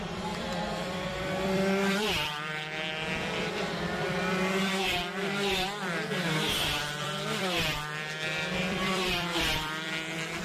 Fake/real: fake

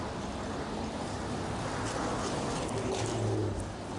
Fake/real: real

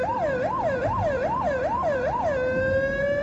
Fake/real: real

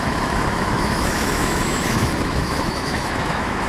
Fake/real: fake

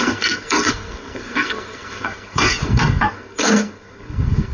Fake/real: fake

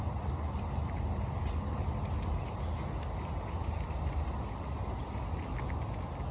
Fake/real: real